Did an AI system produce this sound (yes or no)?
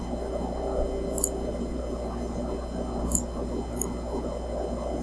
no